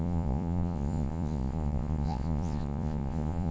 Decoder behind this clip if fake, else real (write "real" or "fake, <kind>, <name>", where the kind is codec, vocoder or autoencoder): fake, vocoder, Vocos